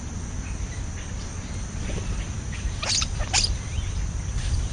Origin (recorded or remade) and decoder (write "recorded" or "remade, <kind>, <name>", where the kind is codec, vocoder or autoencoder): recorded